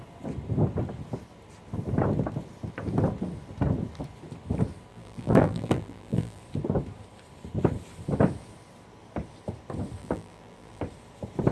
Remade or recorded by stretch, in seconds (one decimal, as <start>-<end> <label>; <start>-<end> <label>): 0.0-4.9 recorded; 4.9-6.4 remade; 6.4-10.0 recorded; 10.0-10.8 remade; 10.8-11.5 recorded